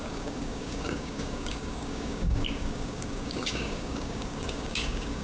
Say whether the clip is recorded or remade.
remade